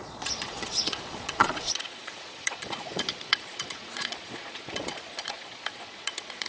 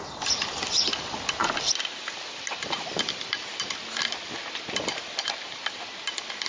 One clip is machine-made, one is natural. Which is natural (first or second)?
second